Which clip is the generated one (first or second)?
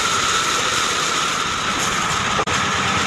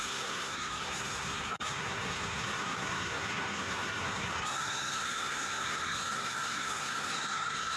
second